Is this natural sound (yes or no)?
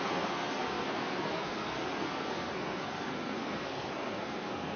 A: no